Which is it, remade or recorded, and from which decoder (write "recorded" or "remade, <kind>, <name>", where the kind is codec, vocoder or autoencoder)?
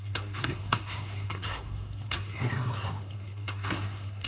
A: remade, codec, SNAC